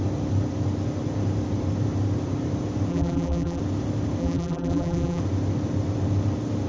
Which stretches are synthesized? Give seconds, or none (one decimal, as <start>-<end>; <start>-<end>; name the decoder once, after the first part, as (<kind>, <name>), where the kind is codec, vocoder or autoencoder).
2.9-3.6 (vocoder, BigVGAN v2); 4.2-5.2